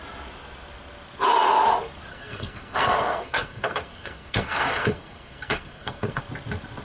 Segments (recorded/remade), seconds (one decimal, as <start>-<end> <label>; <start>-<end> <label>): 0.0-2.1 recorded; 2.1-6.2 remade; 6.2-6.8 recorded